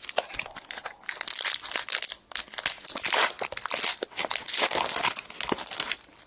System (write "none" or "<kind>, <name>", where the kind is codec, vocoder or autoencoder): none